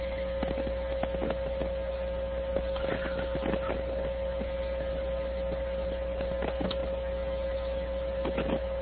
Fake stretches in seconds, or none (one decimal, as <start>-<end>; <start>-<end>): none

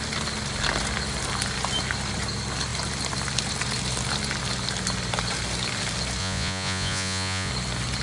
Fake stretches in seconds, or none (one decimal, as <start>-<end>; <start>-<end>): 6.2-7.5